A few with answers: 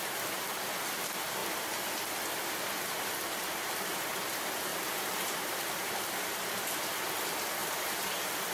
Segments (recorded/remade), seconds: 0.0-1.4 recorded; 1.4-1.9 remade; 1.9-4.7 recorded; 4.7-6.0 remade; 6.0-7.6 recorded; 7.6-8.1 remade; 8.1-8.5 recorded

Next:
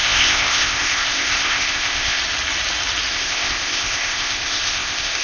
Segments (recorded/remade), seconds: 0.0-2.2 remade; 2.2-3.1 recorded; 3.1-5.2 remade